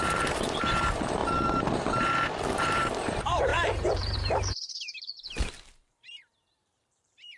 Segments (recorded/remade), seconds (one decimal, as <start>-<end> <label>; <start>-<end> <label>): 0.0-1.2 remade; 1.2-2.6 recorded; 2.6-7.4 remade